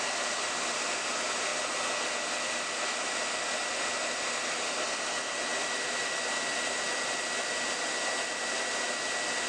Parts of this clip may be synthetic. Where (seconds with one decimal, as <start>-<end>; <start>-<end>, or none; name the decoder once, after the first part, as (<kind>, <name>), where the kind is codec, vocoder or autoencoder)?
none